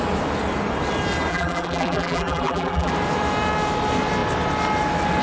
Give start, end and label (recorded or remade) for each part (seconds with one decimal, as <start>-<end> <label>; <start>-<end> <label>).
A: 0.0-1.3 recorded; 1.3-2.9 remade; 2.9-5.2 recorded